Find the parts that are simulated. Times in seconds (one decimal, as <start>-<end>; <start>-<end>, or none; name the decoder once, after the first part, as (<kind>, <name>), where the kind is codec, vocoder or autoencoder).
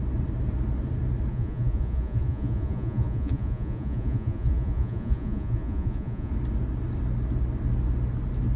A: 1.3-6.3 (vocoder, Vocos)